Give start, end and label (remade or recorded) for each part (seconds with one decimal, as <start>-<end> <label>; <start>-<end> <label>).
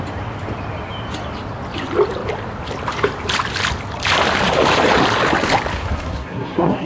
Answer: 0.0-5.7 recorded; 5.7-6.9 remade